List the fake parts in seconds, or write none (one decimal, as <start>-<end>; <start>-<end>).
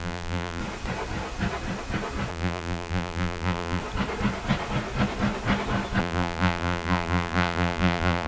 0.0-0.6; 2.3-3.8; 6.0-8.3